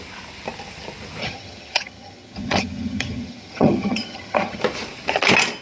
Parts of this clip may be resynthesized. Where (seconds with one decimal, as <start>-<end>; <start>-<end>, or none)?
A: 1.2-4.6